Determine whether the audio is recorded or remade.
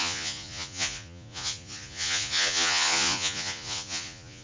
remade